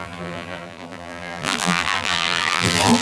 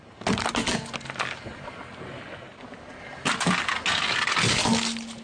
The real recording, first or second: second